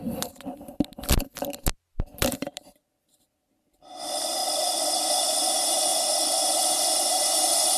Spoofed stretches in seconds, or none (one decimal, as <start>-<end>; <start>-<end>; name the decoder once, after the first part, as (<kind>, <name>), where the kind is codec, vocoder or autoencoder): none